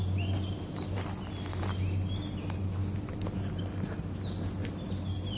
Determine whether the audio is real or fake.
real